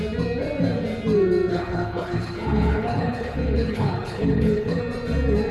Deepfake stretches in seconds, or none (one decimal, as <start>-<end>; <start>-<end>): 1.5-4.8